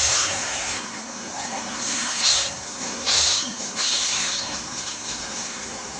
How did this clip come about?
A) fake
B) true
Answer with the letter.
A